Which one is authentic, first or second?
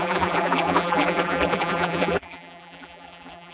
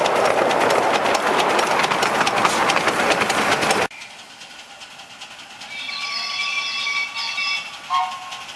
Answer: second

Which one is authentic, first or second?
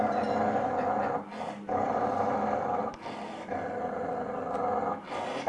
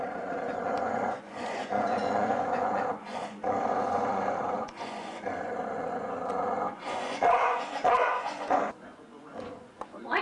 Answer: first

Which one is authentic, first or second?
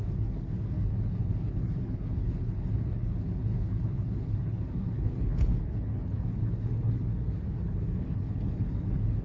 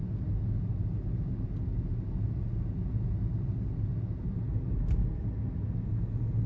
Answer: second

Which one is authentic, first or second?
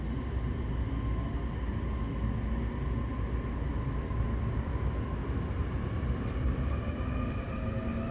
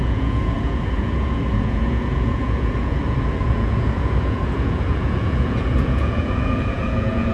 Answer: first